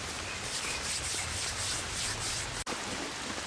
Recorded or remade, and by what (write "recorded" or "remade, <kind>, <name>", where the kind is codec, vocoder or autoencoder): recorded